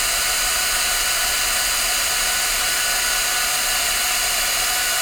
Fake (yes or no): no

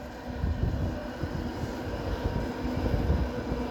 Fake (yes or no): no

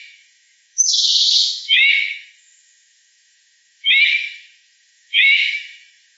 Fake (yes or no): yes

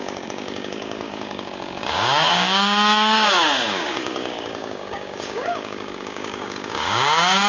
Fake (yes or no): yes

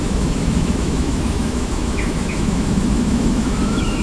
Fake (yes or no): yes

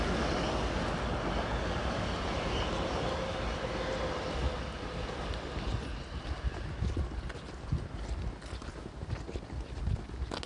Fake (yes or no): no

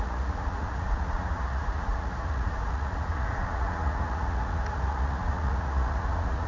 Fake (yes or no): yes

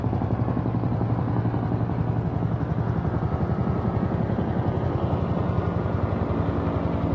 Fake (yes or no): no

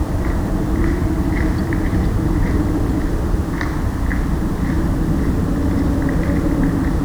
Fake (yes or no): yes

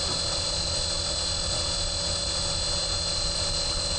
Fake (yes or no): no